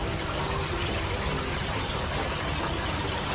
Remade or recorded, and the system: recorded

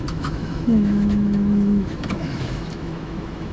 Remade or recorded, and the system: remade, autoencoder, DAC-VAE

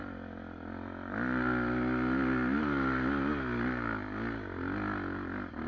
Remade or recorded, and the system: recorded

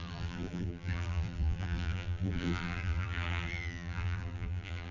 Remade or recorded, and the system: remade, vocoder, BigVGAN v2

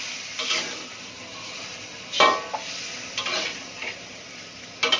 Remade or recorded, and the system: recorded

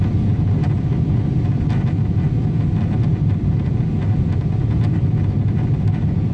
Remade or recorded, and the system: recorded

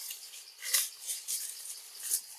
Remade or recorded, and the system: recorded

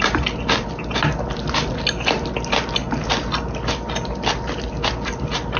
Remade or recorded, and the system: recorded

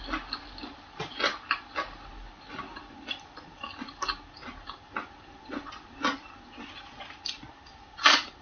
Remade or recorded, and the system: recorded